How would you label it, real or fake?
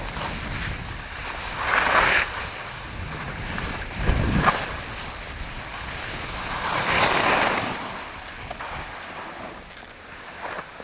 real